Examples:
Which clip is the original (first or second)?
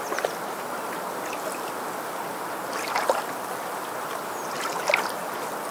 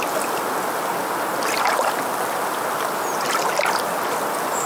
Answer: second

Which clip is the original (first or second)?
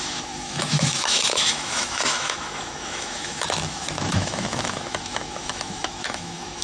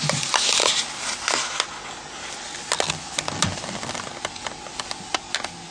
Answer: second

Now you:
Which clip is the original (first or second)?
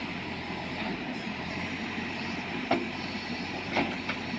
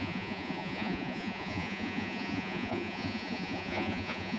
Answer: first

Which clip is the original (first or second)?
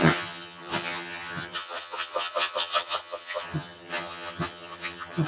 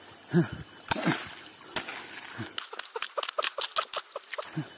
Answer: second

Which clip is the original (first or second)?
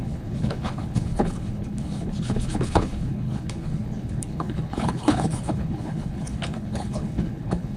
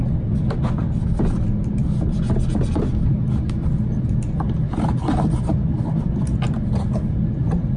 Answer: second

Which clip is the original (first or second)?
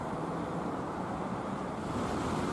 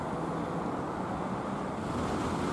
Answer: second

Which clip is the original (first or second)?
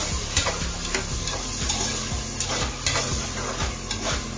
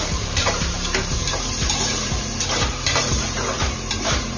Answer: first